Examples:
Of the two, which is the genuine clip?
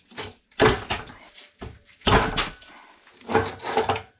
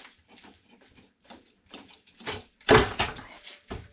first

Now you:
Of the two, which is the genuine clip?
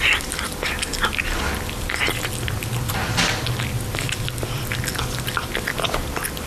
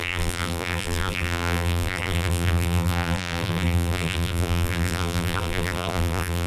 first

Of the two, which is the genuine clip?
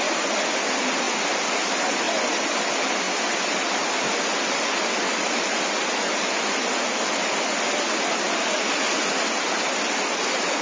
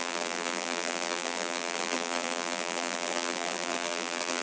first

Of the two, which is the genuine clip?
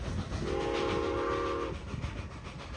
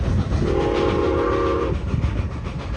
first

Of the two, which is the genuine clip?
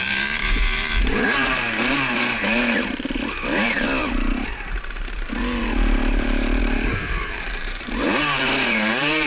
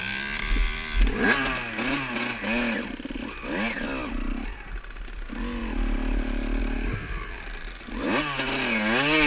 second